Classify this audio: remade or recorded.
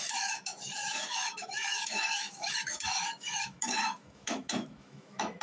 remade